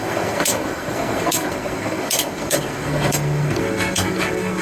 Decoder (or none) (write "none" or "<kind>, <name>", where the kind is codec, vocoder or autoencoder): codec, SNAC